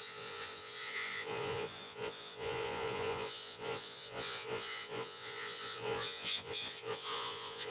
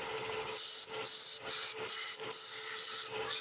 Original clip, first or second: second